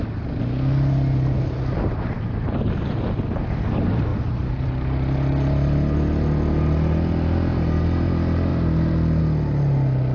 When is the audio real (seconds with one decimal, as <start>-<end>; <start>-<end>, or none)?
0.0-4.1; 4.7-7.5; 8.1-8.5; 9.2-10.1